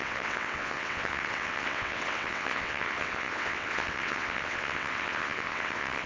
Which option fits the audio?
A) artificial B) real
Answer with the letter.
A